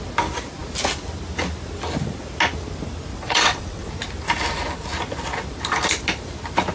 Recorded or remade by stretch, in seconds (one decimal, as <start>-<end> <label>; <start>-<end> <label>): 0.0-3.1 recorded; 3.1-3.9 remade; 3.9-6.7 recorded